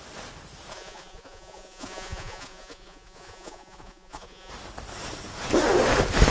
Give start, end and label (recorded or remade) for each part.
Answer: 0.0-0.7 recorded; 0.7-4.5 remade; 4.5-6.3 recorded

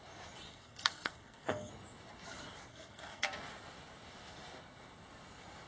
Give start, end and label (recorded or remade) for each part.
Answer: 0.0-0.5 recorded; 0.5-1.7 remade; 1.7-2.7 recorded; 2.7-3.3 remade; 3.3-5.7 recorded

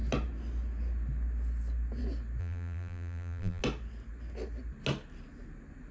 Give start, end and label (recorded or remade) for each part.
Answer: 0.0-2.4 recorded; 2.4-3.6 remade; 3.6-5.9 recorded

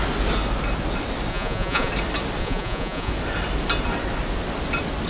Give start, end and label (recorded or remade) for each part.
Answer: 0.0-1.3 recorded; 1.3-1.9 remade; 1.9-2.4 recorded; 2.4-3.1 remade; 3.1-5.1 recorded

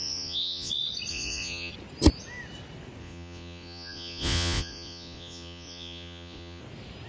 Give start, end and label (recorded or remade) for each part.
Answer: 0.0-0.7 remade; 0.7-1.1 recorded; 1.1-1.7 remade; 1.7-3.0 recorded; 3.0-6.6 remade; 6.6-7.1 recorded